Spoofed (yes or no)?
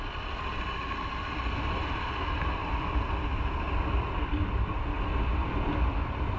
yes